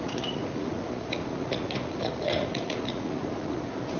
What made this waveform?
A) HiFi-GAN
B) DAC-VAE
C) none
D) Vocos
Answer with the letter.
D